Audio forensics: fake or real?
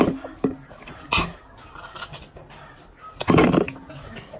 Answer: real